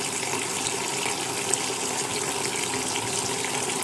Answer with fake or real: real